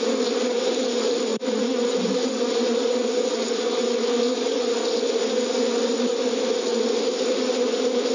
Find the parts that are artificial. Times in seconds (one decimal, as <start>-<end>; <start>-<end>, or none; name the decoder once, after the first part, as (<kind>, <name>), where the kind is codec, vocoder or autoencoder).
1.3-4.2 (vocoder, BigVGAN v2); 6.7-7.4